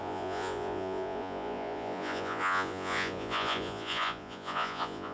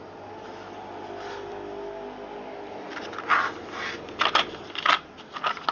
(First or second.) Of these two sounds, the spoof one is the first